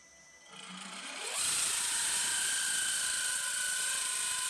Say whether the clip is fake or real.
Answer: real